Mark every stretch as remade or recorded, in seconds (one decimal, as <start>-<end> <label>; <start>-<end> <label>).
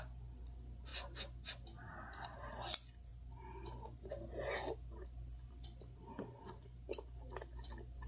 0.0-8.1 recorded